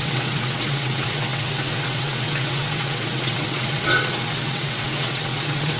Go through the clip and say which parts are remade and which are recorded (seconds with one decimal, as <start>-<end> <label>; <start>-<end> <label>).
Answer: 0.0-5.8 remade